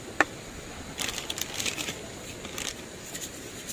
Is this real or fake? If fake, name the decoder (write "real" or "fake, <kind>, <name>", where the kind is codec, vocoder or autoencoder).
fake, vocoder, BigVGAN v2